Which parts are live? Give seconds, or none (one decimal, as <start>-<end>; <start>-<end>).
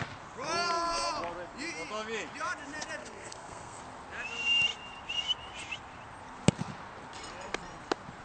0.0-3.0; 3.8-8.2